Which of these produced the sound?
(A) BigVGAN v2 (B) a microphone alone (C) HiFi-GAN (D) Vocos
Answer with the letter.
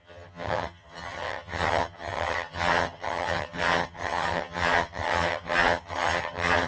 C